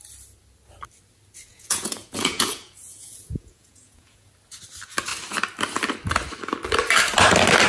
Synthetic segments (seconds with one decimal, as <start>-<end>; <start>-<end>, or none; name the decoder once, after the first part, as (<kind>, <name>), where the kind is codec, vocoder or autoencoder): 1.5-4.3 (vocoder, Vocos)